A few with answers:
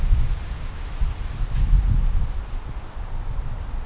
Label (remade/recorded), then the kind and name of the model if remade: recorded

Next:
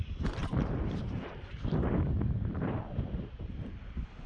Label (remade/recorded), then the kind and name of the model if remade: remade, vocoder, BigVGAN v2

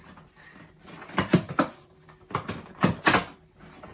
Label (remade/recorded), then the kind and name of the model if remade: remade, vocoder, BigVGAN v2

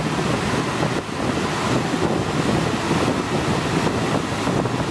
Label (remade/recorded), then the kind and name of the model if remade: recorded